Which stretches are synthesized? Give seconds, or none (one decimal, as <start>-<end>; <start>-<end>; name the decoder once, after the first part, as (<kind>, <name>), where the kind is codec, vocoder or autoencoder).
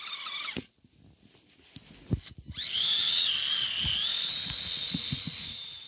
none